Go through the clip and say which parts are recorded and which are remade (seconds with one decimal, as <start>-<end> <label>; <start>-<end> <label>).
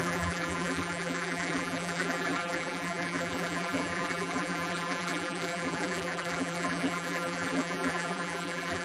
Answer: 0.0-8.8 remade